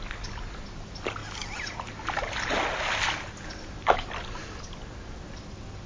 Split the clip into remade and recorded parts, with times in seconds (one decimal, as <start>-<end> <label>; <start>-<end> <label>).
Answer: 0.0-5.9 recorded